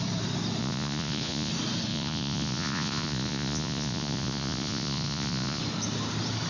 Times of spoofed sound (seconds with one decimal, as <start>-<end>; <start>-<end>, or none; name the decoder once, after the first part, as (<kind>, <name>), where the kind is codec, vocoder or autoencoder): 0.6-1.5 (vocoder, Vocos); 1.9-5.6